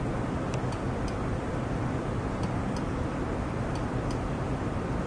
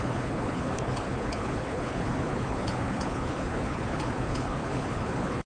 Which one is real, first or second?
first